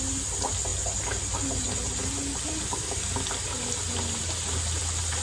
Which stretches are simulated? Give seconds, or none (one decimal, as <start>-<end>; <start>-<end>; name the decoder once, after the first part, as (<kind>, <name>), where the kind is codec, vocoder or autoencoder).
0.0-0.7 (vocoder, BigVGAN v2); 3.8-5.2